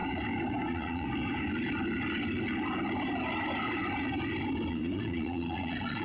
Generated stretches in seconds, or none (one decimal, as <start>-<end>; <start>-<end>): 0.7-1.1; 4.7-6.0